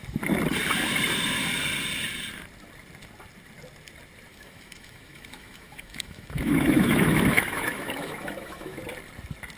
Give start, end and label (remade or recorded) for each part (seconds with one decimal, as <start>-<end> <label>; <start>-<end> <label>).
0.0-4.3 recorded; 4.3-8.8 remade; 8.8-9.6 recorded

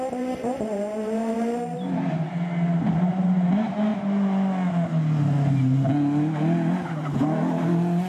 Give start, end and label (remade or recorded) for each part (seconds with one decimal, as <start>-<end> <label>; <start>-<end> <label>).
0.0-3.9 remade; 3.9-8.1 recorded

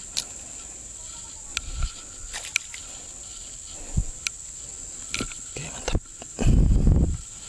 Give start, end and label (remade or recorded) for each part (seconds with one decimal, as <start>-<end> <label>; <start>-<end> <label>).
0.0-7.5 recorded

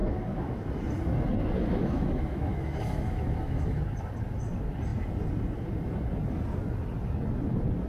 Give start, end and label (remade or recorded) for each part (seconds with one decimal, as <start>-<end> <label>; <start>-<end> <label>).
0.0-0.7 remade; 0.7-1.6 recorded; 1.6-3.8 remade; 3.8-7.9 recorded

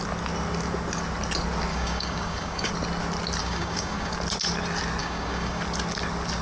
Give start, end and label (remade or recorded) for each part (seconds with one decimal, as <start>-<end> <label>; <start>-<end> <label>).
0.0-1.7 recorded; 1.7-2.7 remade; 2.7-3.4 recorded; 3.4-4.1 remade; 4.1-5.0 recorded; 5.0-5.6 remade; 5.6-6.4 recorded

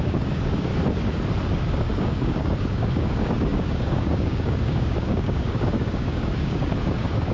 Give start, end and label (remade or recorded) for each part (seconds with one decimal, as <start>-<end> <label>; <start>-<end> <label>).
0.0-0.7 remade; 0.7-1.5 recorded; 1.5-7.3 remade

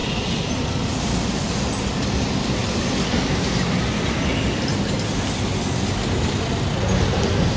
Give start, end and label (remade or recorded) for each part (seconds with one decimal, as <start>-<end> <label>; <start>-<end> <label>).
0.0-7.6 recorded

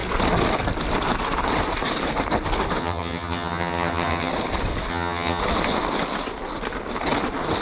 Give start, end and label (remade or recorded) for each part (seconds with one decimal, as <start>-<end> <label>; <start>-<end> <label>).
0.0-2.8 recorded; 2.8-4.3 remade; 4.3-4.9 recorded; 4.9-5.4 remade; 5.4-7.6 recorded